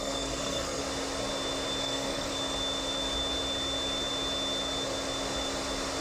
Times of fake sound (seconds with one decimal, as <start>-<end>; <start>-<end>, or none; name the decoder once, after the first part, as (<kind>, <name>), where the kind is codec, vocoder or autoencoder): 0.0-0.8 (codec, SNAC); 1.8-2.3